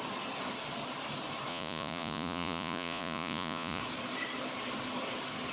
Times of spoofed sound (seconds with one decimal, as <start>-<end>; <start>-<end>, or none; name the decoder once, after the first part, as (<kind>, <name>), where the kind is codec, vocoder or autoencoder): 1.5-3.8 (vocoder, Vocos)